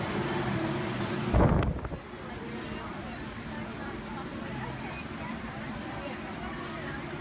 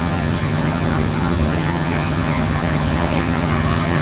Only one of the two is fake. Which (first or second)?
second